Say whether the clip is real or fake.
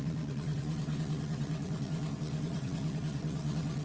fake